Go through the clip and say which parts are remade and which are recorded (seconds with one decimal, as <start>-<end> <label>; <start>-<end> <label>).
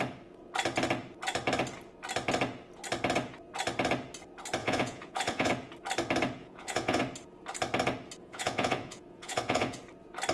0.0-4.6 recorded; 4.6-5.5 remade; 5.5-6.4 recorded; 6.4-7.0 remade; 7.0-8.2 recorded; 8.2-9.8 remade; 9.8-10.3 recorded